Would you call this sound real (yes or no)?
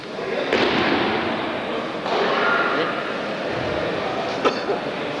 yes